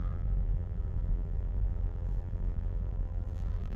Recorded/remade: remade